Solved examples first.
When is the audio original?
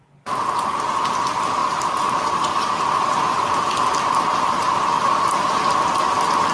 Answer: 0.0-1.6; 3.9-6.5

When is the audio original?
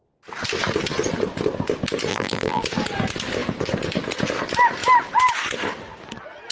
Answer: 0.0-2.1; 2.6-6.5